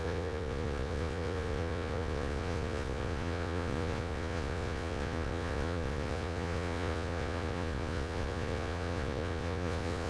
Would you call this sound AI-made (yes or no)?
yes